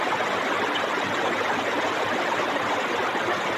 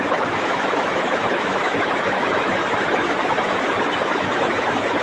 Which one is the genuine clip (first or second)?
first